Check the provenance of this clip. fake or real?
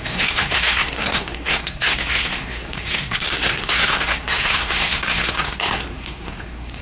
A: fake